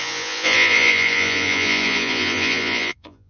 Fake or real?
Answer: fake